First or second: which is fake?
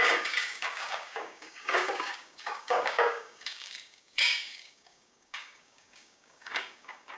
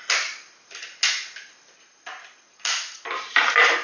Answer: first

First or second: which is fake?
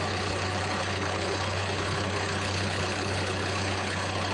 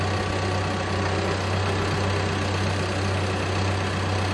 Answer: first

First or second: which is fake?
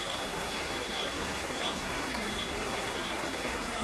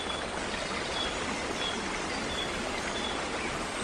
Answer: first